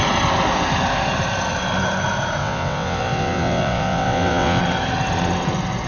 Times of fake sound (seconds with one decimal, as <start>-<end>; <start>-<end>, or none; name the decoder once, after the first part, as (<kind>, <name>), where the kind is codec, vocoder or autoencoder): 2.4-4.6 (vocoder, WaveNeXt)